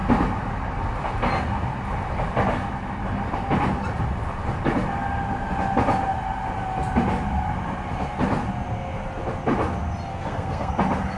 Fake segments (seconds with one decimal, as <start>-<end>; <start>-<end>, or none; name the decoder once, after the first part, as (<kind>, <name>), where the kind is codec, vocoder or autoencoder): 10.1-10.7 (codec, SNAC)